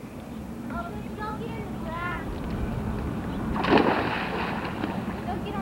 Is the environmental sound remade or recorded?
recorded